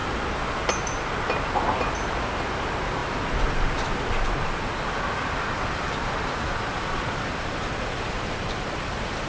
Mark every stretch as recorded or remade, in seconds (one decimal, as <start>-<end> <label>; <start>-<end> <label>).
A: 0.0-9.3 recorded